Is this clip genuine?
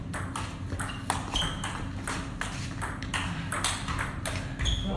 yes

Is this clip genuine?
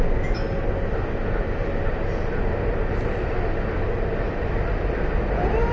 yes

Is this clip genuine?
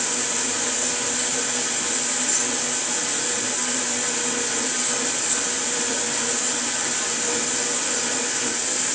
yes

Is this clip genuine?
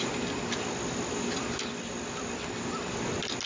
yes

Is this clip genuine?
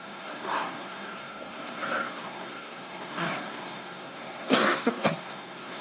no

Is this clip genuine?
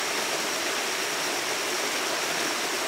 yes